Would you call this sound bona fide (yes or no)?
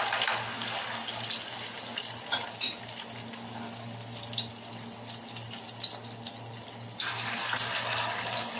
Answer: yes